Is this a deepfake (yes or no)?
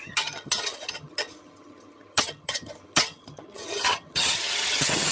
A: yes